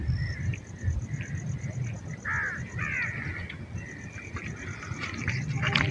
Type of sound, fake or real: real